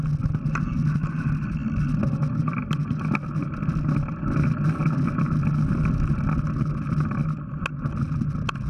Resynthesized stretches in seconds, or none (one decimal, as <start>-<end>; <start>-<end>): none